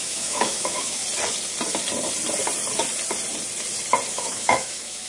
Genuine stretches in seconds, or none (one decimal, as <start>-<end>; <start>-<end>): 1.0-4.1